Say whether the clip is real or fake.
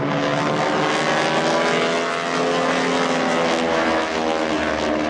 real